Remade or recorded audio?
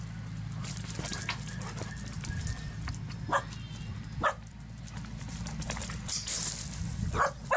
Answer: recorded